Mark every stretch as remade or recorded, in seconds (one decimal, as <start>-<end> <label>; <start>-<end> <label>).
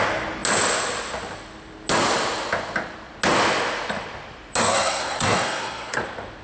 0.0-4.6 recorded; 4.6-6.0 remade; 6.0-6.4 recorded